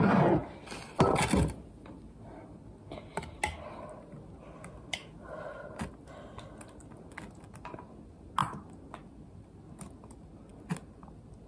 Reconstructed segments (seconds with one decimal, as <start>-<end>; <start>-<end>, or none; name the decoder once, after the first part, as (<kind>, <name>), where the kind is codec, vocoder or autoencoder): none